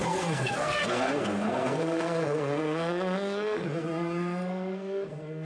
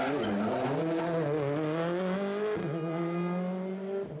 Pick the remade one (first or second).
first